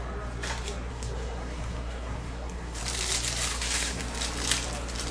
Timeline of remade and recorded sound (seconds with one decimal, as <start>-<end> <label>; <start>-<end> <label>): 0.0-0.9 recorded; 0.9-2.8 remade; 2.8-3.5 recorded; 3.5-4.0 remade; 4.0-5.1 recorded